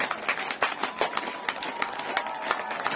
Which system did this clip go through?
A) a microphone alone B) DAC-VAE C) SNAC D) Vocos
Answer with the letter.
A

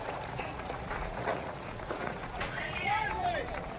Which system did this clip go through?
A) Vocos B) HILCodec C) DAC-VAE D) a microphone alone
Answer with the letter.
A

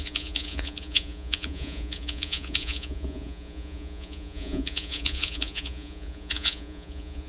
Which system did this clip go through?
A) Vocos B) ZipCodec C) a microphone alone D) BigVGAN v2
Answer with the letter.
A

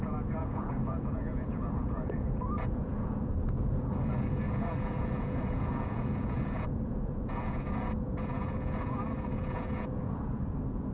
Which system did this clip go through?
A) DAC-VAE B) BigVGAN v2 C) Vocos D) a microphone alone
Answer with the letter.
C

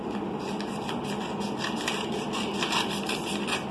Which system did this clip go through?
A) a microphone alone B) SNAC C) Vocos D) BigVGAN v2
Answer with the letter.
A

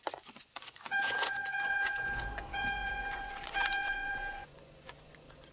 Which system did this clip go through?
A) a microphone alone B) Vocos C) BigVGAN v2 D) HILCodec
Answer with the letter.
B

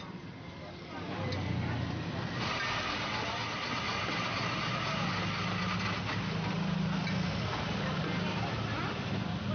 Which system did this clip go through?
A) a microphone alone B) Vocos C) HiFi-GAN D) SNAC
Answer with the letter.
A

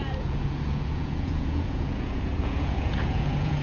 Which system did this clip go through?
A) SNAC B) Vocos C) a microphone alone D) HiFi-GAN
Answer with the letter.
B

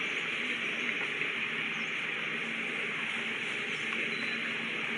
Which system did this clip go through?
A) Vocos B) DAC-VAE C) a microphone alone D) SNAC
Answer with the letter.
C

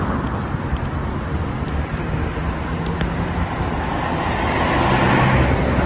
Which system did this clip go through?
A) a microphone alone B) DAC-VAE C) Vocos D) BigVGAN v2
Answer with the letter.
A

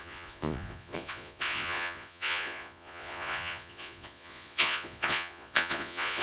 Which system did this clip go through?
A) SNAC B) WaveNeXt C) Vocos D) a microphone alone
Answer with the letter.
C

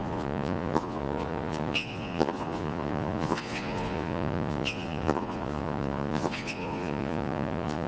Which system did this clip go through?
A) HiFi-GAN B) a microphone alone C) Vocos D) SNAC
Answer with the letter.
C